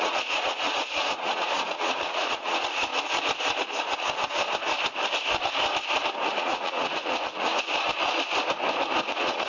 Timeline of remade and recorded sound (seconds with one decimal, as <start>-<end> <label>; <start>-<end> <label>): 0.0-2.9 remade; 2.9-6.4 recorded; 6.4-7.5 remade; 7.5-9.1 recorded; 9.1-9.5 remade